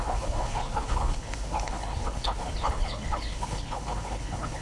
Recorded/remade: remade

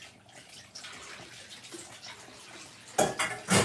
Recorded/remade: recorded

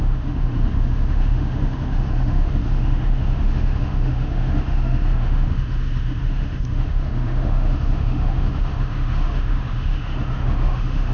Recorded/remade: remade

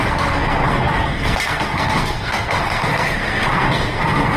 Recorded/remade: remade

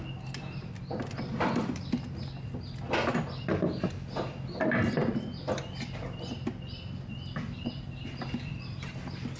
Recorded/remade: recorded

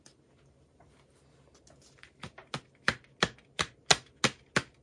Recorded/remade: recorded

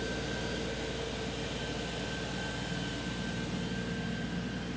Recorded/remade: recorded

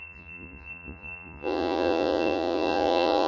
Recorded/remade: remade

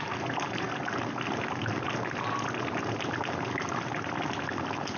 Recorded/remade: recorded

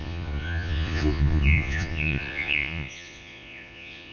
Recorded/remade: remade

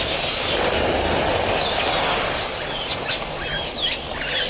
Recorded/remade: recorded